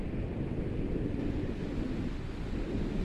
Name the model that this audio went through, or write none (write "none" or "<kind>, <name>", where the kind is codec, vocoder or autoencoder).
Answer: vocoder, BigVGAN v2